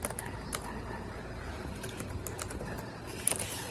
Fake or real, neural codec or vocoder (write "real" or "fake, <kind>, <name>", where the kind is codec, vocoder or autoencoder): real